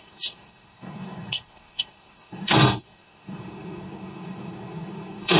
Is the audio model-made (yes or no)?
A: yes